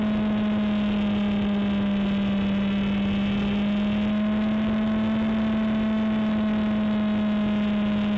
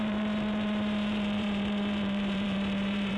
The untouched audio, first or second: first